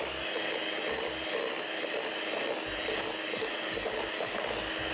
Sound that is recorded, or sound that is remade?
recorded